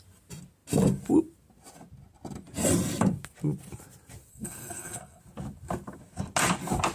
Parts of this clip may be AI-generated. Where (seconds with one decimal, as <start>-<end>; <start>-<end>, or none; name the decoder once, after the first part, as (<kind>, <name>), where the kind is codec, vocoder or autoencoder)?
4.3-5.2 (codec, SNAC)

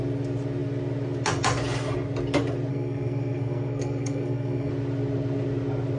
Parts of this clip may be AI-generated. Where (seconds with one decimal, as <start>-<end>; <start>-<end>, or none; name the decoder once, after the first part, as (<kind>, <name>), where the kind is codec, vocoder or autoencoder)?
2.7-4.7 (codec, SNAC)

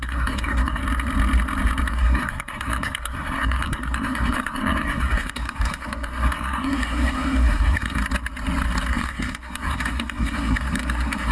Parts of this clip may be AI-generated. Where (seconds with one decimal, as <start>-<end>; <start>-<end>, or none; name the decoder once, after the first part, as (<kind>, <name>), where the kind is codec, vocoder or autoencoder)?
0.0-0.8 (codec, SNAC); 1.9-8.0; 8.9-11.3

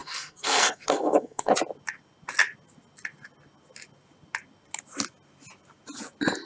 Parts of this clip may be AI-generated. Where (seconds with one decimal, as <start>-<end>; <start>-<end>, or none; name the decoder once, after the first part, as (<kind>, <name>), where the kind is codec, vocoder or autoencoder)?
0.0-1.5 (codec, SNAC)